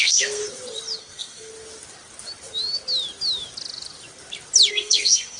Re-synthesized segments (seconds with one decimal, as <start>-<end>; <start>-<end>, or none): 0.0-0.4; 1.0-1.5; 4.7-5.4